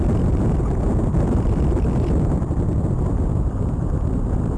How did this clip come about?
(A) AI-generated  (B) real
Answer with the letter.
B